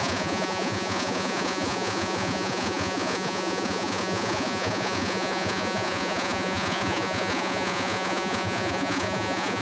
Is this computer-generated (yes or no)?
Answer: yes